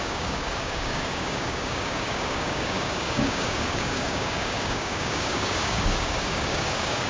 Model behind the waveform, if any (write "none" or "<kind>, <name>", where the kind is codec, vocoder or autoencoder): codec, DAC